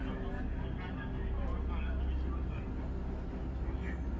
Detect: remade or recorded recorded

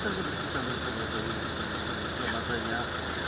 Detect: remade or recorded recorded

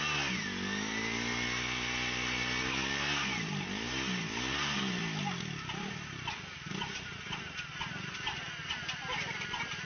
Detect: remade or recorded recorded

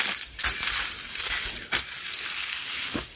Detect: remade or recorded recorded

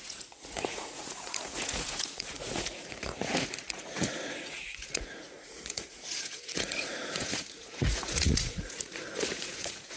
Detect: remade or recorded remade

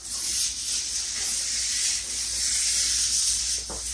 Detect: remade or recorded recorded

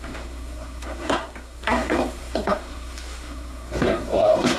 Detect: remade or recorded remade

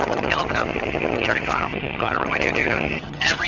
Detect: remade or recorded remade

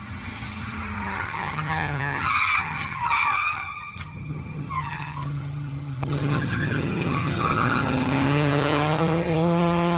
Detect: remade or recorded remade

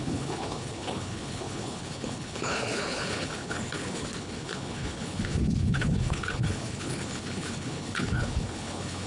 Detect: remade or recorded remade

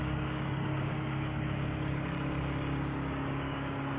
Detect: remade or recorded remade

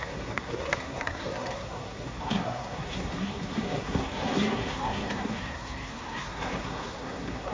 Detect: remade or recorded remade